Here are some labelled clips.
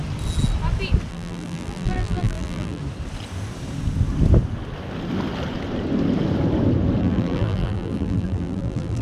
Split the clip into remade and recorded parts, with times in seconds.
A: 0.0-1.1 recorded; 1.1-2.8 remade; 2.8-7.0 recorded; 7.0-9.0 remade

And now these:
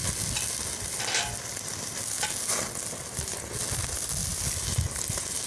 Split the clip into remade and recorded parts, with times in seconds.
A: 0.0-5.5 recorded

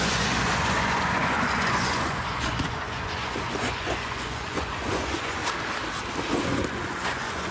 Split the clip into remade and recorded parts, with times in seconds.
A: 0.0-5.4 remade; 5.4-6.4 recorded; 6.4-7.5 remade

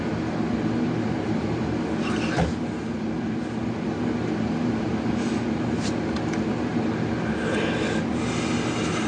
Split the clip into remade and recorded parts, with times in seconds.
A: 0.0-9.1 recorded

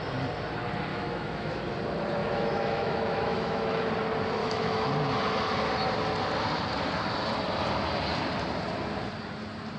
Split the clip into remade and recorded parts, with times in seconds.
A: 0.0-0.9 recorded; 0.9-1.6 remade; 1.6-2.2 recorded; 2.2-3.9 remade; 3.9-4.4 recorded; 4.4-4.9 remade; 4.9-9.8 recorded